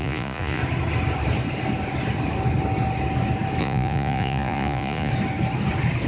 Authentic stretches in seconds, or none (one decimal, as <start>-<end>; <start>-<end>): 0.6-3.6; 5.1-6.1